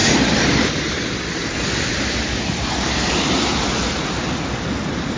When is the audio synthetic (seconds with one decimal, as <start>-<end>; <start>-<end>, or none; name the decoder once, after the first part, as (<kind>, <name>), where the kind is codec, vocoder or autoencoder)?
0.0-3.1 (vocoder, BigVGAN v2); 3.5-4.1